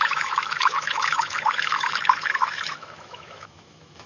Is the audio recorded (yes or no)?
no